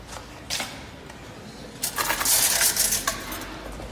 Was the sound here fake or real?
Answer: real